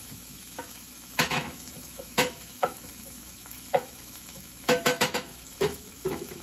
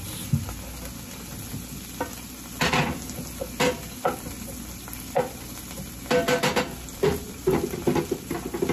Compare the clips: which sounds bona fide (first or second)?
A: second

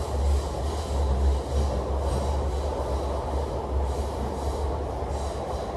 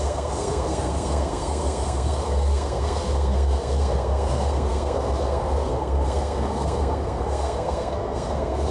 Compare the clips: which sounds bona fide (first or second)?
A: first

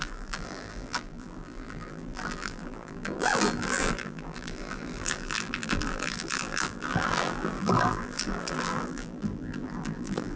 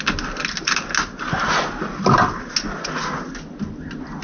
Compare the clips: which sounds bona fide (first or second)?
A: second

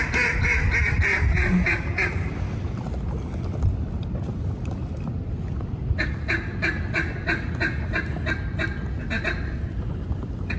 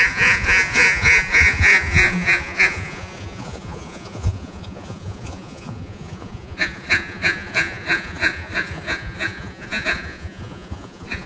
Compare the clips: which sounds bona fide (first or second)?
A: first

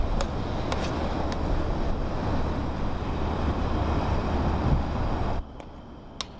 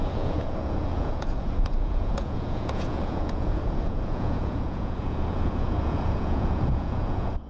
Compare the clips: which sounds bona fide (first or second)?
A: first